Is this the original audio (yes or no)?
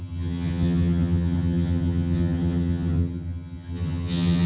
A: no